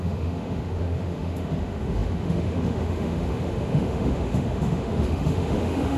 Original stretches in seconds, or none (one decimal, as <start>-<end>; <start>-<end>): none